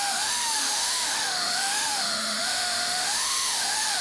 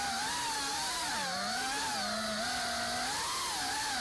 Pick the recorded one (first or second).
second